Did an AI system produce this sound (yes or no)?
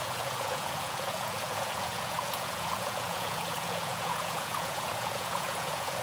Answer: yes